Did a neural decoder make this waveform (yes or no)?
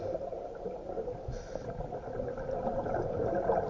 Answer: no